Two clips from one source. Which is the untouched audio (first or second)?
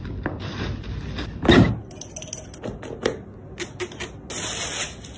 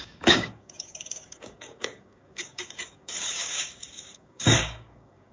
first